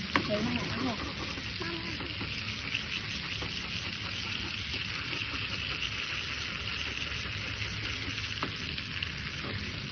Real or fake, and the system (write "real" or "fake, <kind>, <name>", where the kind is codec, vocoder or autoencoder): real